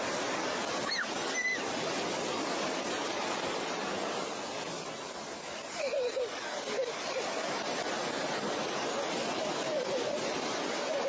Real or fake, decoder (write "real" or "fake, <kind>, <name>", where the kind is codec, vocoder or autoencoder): real